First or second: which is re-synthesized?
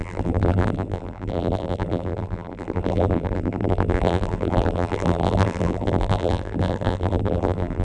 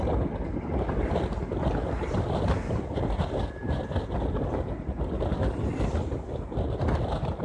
first